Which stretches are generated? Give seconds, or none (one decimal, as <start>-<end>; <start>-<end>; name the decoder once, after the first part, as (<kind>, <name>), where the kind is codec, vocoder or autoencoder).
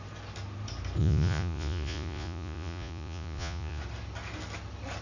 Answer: 1.0-3.8 (vocoder, Vocos)